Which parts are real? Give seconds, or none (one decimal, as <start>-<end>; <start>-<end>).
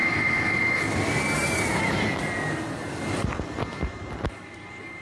0.0-5.0